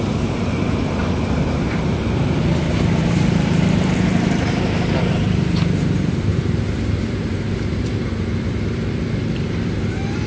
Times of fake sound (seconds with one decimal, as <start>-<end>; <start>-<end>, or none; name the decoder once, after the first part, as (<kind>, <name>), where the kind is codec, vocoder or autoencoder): 0.0-10.3 (vocoder, BigVGAN v2)